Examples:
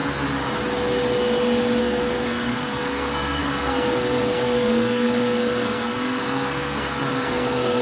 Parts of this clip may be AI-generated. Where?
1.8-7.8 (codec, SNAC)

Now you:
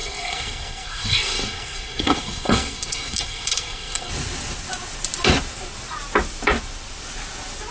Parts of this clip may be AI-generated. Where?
0.0-4.1 (codec, SNAC)

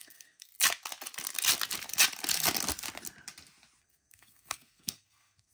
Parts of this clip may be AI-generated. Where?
0.0-0.5 (codec, SNAC); 3.8-5.5

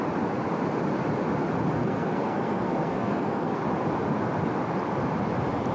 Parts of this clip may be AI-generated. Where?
1.8-3.6 (codec, SNAC)

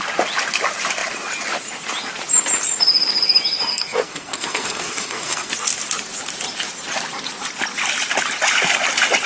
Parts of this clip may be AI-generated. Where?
3.7-5.5 (codec, SNAC)

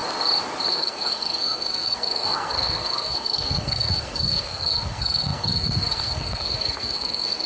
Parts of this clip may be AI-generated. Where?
0.7-7.5 (codec, SNAC)

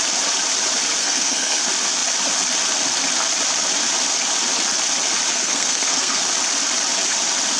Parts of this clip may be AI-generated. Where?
1.0-1.6 (codec, SNAC); 5.3-6.2